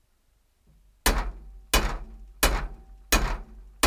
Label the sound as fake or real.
real